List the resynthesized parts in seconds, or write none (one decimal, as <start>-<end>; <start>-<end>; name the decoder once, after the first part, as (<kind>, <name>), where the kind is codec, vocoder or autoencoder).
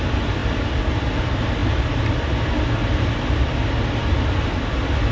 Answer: none